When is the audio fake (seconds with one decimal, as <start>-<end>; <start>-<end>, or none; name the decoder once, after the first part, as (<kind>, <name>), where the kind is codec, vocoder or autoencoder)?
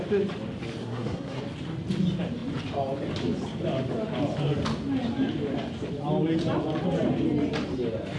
0.8-1.4 (codec, SNAC)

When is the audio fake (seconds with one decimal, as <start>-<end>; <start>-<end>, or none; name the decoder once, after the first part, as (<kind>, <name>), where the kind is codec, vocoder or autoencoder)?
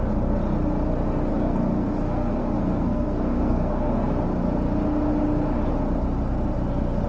1.3-4.1 (codec, SNAC)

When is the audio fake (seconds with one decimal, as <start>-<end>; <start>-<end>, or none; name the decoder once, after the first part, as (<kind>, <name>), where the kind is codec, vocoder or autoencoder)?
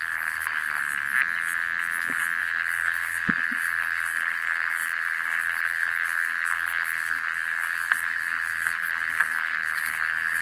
0.0-0.8 (codec, SNAC); 2.4-10.4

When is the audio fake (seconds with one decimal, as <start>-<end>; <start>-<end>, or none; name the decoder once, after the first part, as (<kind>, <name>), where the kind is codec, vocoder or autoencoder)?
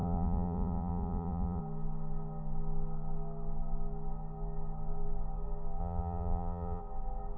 0.0-1.6 (vocoder, Vocos); 5.8-6.8